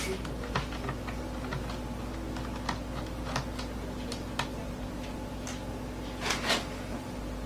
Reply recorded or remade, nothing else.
recorded